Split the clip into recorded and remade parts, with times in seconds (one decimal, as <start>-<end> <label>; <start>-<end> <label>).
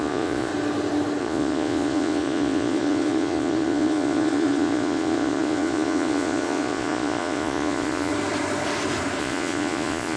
0.0-0.5 remade; 0.5-1.2 recorded; 1.2-8.1 remade; 8.1-9.2 recorded; 9.2-10.2 remade